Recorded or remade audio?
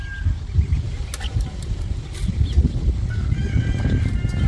recorded